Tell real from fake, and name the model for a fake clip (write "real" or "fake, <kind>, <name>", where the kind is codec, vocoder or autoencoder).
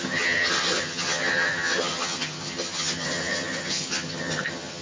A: fake, vocoder, HiFi-GAN